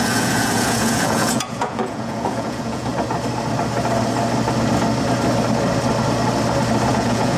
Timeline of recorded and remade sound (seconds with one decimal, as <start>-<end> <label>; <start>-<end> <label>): 0.0-2.9 remade; 2.9-6.9 recorded; 6.9-7.4 remade